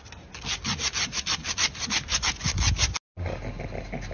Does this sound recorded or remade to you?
recorded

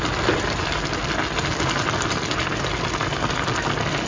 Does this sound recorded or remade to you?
recorded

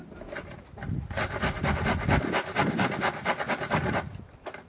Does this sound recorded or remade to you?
recorded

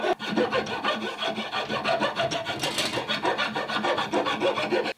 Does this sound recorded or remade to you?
recorded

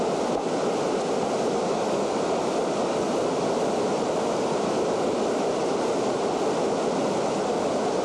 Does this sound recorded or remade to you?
recorded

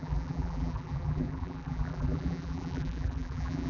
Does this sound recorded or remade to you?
remade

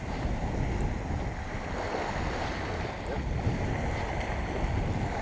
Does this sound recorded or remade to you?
recorded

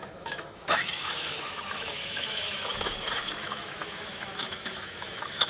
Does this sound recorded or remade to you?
remade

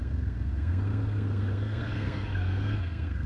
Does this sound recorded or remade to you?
remade